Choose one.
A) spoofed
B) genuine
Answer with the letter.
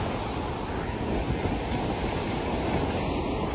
B